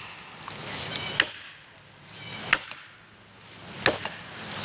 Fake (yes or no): no